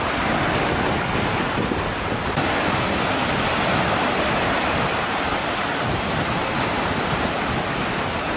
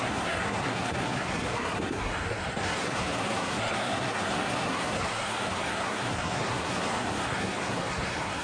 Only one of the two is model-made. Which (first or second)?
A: second